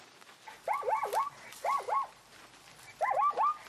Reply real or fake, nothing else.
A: real